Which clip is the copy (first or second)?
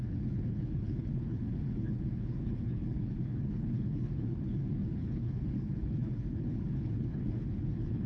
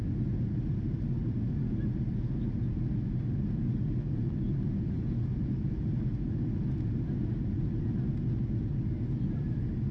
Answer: first